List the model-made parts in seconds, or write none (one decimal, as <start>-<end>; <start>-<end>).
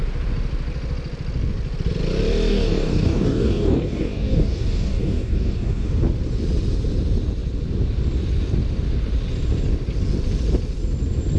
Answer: 2.5-5.9